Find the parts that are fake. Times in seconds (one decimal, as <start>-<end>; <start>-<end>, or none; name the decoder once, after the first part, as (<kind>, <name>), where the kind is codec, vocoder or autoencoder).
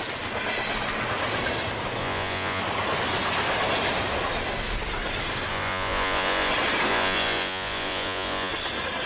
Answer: 2.0-2.6 (vocoder, Vocos); 5.5-6.5; 6.9-8.5